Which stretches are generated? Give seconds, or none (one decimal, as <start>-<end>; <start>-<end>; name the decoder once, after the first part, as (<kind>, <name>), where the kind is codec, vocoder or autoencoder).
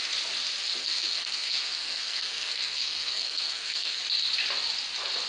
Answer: 0.8-4.0 (codec, SNAC)